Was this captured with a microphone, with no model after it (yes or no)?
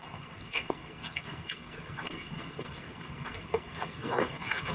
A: no